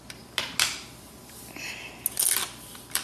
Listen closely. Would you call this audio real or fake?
real